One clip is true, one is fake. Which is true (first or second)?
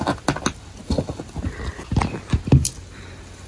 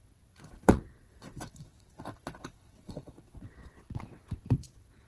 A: first